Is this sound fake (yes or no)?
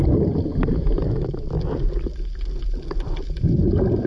no